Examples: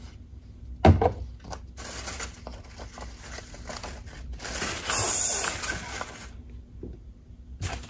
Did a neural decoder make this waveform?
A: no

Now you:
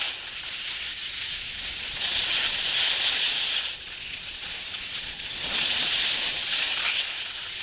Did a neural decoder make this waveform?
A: yes